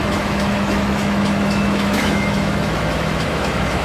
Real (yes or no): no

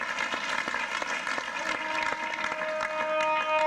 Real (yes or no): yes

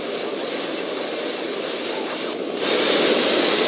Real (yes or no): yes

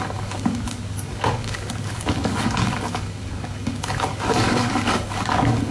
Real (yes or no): no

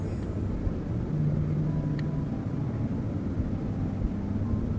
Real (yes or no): yes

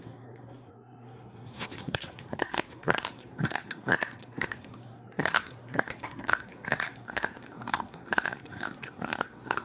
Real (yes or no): no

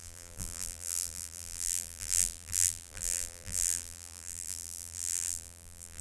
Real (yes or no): no